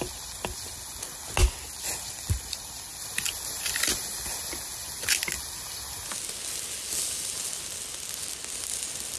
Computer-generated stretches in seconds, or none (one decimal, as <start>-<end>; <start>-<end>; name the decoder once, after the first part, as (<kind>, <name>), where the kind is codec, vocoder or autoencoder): none